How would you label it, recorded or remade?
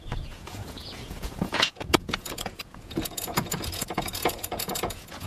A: remade